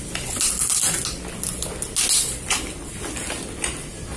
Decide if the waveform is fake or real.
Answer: real